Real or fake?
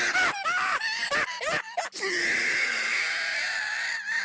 fake